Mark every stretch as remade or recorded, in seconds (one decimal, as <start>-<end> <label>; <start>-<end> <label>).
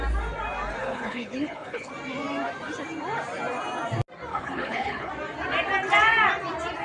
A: 0.0-0.8 recorded; 0.8-1.9 remade; 1.9-4.3 recorded; 4.3-5.1 remade; 5.1-6.8 recorded